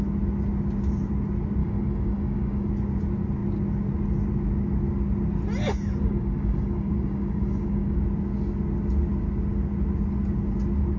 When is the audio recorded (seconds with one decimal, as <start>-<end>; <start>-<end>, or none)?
0.0-1.6; 2.7-6.0; 8.0-11.0